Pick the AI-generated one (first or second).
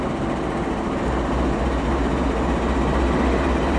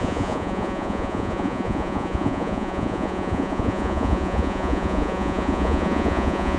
second